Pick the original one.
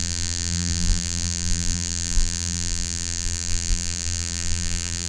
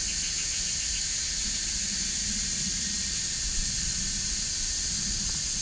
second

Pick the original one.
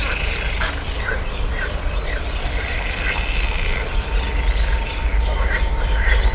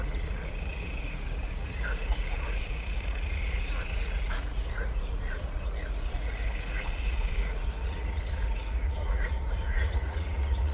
first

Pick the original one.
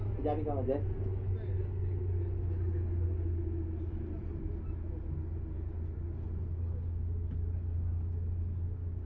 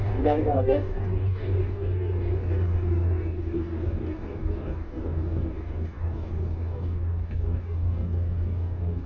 first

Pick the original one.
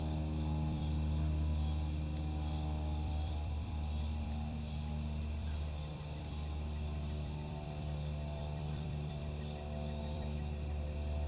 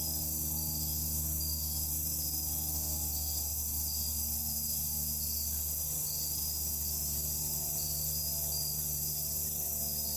second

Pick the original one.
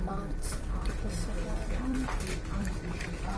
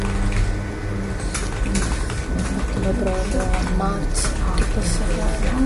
second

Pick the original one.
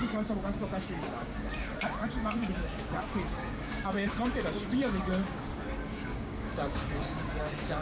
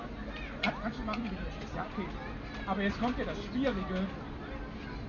second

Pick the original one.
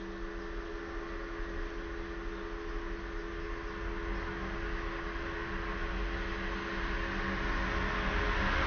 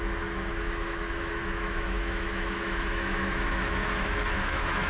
first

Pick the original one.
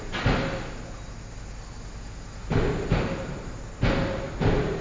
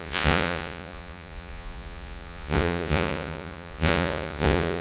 first